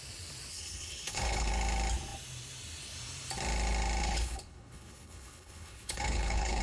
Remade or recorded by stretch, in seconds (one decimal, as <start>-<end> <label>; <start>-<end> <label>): 0.0-0.5 recorded; 0.5-1.5 remade; 1.5-4.0 recorded; 4.0-6.6 remade